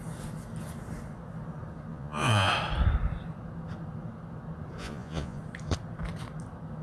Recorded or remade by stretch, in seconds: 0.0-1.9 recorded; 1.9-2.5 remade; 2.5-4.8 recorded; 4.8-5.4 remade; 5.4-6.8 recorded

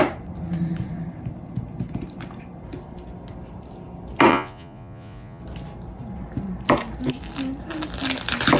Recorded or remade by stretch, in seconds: 0.0-4.3 recorded; 4.3-5.4 remade; 5.4-8.6 recorded

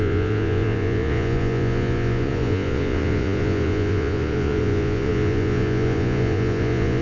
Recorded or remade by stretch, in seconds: 0.0-7.0 remade

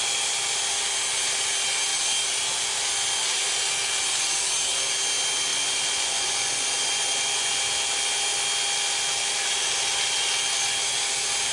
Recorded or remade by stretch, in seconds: 0.0-5.5 recorded; 5.5-7.6 remade; 7.6-11.5 recorded

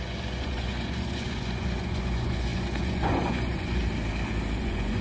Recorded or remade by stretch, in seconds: 0.0-3.8 remade; 3.8-4.6 recorded; 4.6-5.0 remade